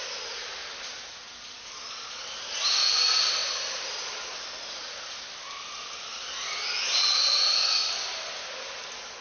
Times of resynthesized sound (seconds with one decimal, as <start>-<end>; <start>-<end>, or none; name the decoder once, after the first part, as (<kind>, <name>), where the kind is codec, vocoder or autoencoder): none